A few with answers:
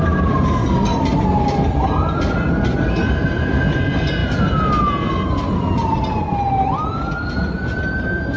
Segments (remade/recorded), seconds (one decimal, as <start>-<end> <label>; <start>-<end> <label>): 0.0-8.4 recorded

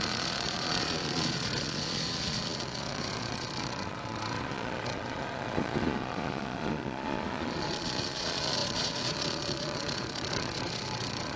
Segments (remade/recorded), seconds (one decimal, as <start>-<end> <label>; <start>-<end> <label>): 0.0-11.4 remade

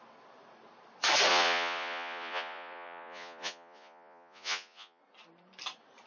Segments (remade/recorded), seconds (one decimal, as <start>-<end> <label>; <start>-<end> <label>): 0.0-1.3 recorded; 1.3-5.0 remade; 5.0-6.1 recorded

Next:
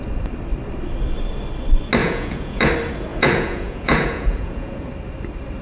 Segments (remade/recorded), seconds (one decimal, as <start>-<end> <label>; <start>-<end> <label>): 0.0-2.0 recorded; 2.0-2.7 remade; 2.7-3.1 recorded; 3.1-4.9 remade; 4.9-5.6 recorded